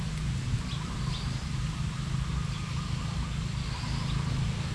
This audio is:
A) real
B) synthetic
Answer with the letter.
A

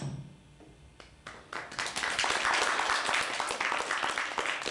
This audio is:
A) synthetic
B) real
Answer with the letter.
B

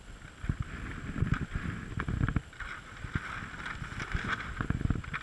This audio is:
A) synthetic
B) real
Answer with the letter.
B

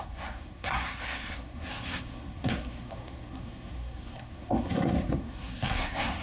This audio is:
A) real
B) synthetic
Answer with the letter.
B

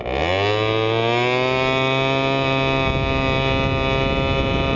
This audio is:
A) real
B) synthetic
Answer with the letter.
A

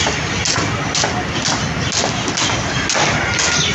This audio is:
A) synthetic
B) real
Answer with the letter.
B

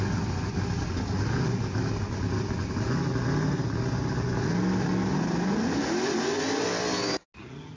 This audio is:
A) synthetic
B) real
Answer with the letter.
B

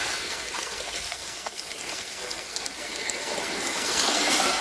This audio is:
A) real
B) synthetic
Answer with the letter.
B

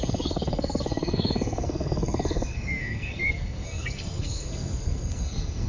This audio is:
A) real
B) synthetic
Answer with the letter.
B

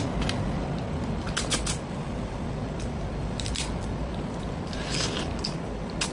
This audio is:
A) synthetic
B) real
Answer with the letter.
B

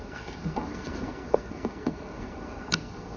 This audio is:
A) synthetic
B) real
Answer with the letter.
A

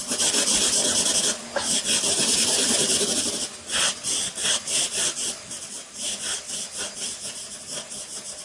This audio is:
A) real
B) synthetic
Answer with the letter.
A